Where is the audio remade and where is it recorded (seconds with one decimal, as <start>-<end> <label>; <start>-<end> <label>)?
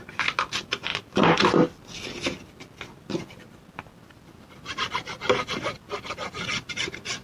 0.0-7.2 recorded